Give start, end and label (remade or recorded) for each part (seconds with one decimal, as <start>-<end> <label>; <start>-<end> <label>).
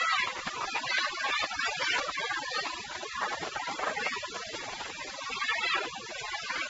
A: 0.0-3.1 remade; 3.1-3.9 recorded; 3.9-5.5 remade; 5.5-6.2 recorded; 6.2-6.7 remade